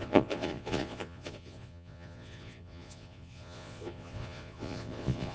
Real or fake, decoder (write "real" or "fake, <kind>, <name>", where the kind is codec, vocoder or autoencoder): fake, vocoder, Vocos